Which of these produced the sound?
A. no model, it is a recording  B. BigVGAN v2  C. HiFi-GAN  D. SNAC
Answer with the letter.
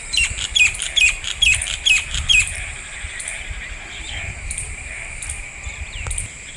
B